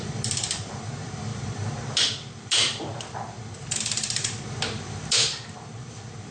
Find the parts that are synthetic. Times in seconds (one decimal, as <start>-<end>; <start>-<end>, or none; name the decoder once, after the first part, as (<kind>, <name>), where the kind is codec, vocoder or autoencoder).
0.0-6.3 (vocoder, BigVGAN v2)